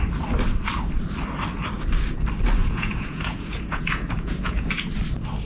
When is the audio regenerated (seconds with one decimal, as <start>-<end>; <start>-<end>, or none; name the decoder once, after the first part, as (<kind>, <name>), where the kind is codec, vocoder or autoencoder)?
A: 2.6-4.9 (vocoder, Vocos)